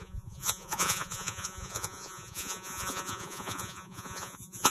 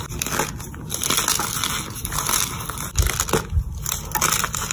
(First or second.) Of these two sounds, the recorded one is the second